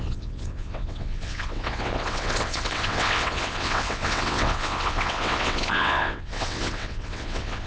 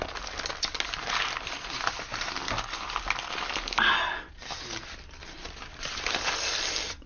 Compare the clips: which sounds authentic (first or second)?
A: second